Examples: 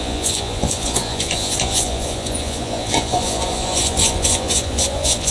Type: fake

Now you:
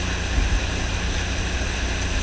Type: real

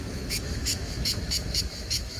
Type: fake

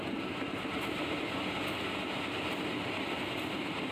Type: real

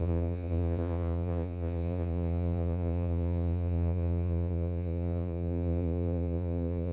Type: fake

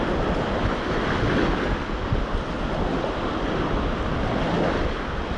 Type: real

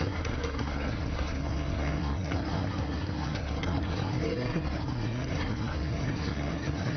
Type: fake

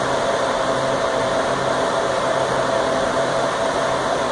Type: fake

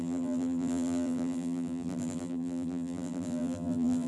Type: fake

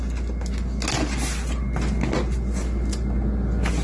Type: real